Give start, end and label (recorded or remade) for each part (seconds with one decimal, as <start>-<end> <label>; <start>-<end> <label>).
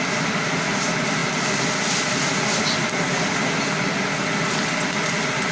0.0-5.5 recorded